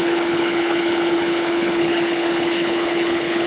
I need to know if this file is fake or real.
fake